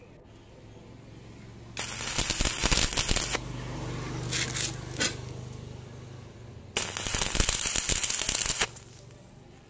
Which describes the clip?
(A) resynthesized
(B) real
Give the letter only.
B